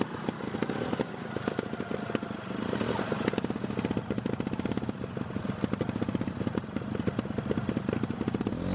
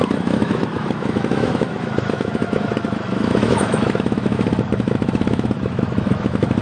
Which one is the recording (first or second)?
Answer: first